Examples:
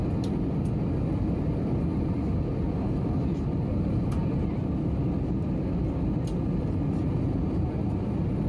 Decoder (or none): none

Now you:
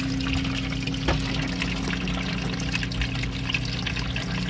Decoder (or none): none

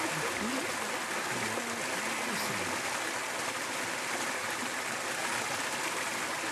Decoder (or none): none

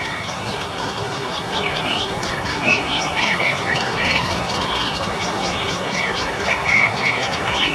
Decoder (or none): codec, SNAC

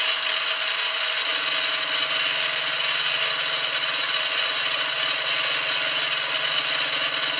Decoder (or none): none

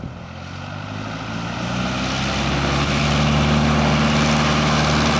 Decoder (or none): none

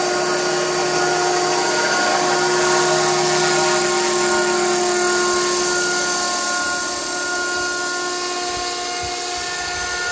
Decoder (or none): none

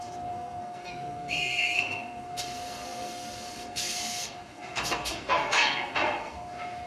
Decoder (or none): codec, SNAC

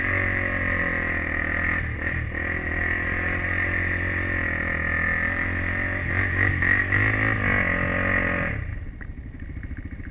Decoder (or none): none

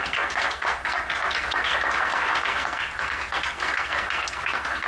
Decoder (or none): codec, SNAC